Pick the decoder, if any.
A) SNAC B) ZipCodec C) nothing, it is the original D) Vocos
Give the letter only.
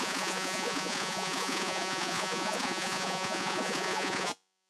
D